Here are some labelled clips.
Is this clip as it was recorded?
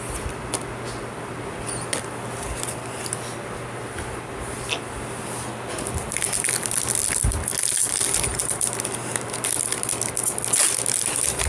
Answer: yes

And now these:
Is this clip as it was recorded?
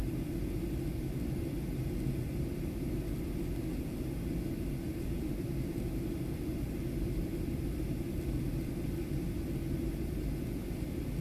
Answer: yes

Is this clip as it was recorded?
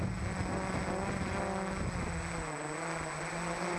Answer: yes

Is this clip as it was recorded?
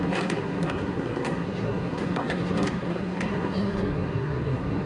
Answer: no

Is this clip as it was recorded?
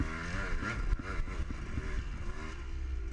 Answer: yes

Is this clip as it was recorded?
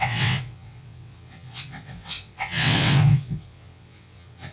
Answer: no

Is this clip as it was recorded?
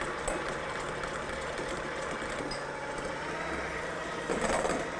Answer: yes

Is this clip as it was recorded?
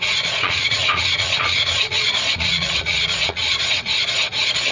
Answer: no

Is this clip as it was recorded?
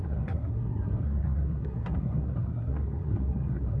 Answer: no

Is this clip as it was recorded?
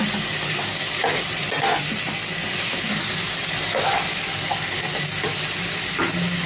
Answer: yes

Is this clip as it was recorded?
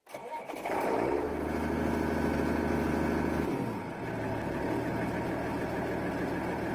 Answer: yes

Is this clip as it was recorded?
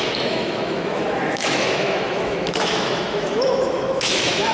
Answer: no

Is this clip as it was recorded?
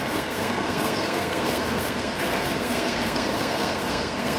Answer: no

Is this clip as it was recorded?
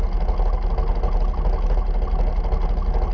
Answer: yes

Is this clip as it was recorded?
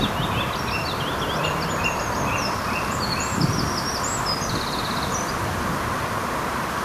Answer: no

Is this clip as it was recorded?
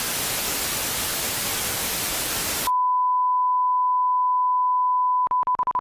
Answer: yes